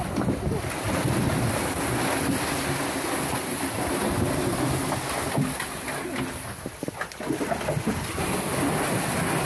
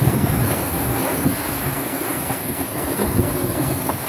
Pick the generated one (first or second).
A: second